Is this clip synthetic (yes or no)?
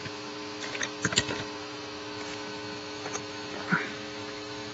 yes